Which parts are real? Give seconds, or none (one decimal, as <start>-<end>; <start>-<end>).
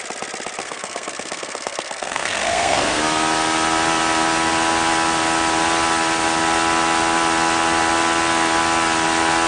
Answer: 0.0-0.6; 3.0-9.5